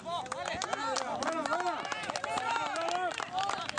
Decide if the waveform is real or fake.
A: real